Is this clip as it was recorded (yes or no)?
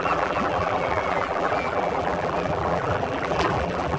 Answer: no